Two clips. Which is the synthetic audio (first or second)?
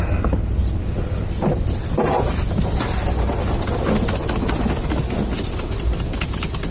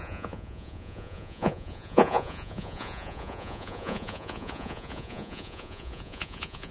second